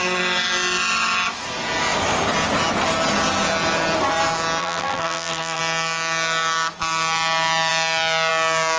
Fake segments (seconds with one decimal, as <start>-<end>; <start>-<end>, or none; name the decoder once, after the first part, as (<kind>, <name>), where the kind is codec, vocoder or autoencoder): 4.6-5.6 (vocoder, BigVGAN v2)